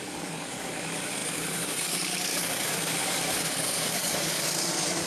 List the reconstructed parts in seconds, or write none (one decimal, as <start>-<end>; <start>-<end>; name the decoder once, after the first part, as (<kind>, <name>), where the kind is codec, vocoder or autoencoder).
0.0-5.1 (codec, DAC)